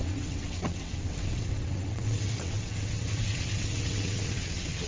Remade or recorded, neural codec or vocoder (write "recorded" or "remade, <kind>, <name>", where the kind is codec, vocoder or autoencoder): remade, vocoder, WaveNeXt